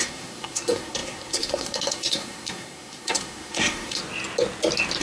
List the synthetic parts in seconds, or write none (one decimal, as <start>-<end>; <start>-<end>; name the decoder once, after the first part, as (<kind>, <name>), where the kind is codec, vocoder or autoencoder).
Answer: 0.0-4.0 (codec, SNAC)